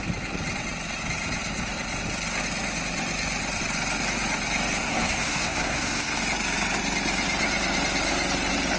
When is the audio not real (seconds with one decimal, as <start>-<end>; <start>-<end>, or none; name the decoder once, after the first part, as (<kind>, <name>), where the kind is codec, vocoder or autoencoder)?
4.8-6.2 (codec, SNAC)